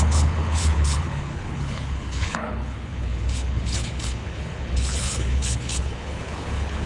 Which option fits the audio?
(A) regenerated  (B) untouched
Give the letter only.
A